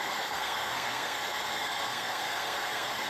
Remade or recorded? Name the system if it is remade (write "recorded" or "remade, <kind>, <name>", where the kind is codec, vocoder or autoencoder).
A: remade, codec, SNAC